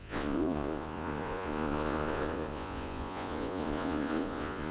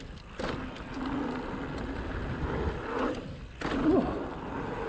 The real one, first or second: second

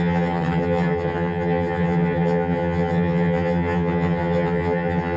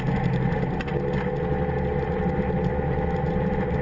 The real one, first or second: second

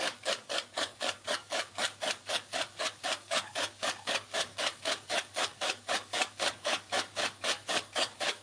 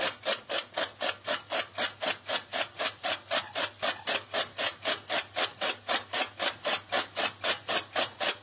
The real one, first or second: second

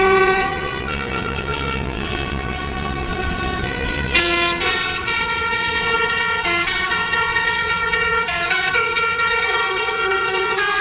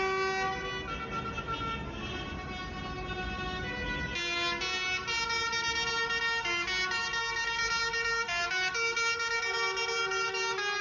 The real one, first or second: second